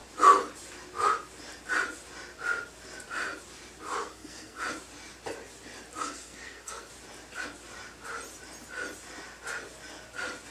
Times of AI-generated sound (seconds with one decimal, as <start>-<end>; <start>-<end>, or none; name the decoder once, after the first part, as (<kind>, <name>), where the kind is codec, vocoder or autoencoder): 4.0-4.6 (codec, SNAC); 6.0-6.9